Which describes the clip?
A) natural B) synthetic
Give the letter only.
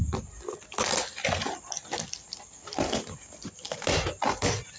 A